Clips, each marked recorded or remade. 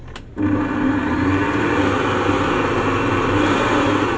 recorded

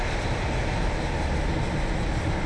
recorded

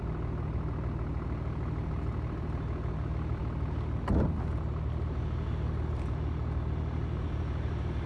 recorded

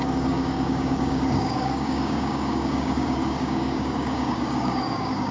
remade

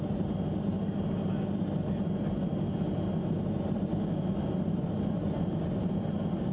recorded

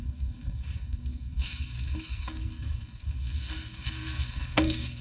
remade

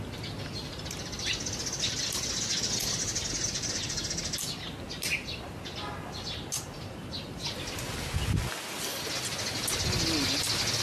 recorded